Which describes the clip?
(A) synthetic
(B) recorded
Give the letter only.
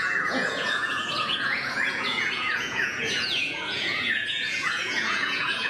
A